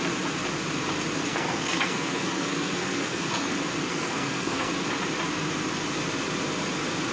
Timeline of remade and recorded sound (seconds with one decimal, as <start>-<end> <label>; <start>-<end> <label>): 0.0-1.2 recorded; 1.2-3.5 remade; 3.5-3.9 recorded; 3.9-4.7 remade; 4.7-7.1 recorded